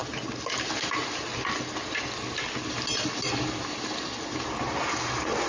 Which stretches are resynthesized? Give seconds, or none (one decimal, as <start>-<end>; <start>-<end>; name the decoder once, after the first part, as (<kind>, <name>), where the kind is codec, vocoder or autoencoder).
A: none